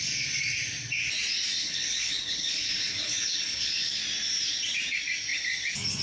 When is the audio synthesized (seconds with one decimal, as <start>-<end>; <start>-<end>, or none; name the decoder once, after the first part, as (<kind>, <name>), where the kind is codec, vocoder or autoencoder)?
1.6-3.9 (codec, HILCodec)